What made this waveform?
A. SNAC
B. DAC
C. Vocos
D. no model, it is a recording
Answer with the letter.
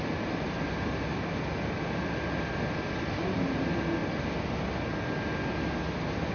D